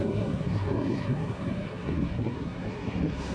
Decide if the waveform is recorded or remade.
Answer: remade